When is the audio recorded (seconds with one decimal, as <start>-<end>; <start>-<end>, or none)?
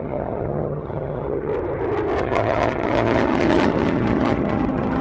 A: 1.5-2.2